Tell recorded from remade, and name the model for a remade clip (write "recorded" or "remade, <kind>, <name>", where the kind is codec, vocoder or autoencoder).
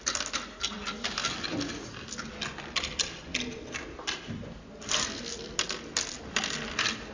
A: recorded